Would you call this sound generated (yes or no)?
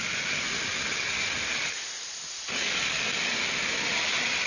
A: no